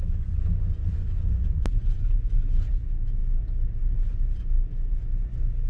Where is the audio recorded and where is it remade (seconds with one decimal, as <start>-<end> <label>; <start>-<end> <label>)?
0.0-5.7 recorded